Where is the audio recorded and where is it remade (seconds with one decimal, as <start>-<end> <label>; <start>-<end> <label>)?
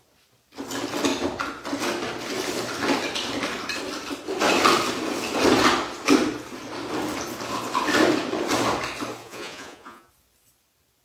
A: 0.0-9.2 recorded; 9.2-10.1 remade; 10.1-11.0 recorded